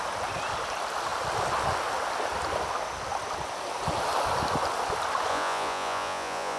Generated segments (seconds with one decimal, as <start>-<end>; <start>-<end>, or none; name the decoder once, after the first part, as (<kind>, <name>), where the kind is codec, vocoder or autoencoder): 5.3-6.6 (vocoder, Vocos)